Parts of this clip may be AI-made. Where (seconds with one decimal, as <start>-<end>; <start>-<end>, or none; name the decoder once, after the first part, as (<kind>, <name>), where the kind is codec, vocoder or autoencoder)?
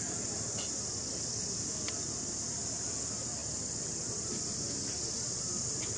none